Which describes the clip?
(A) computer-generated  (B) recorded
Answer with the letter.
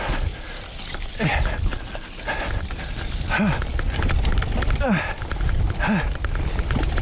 A